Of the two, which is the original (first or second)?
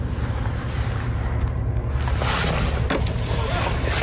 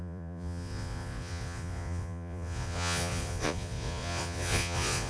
first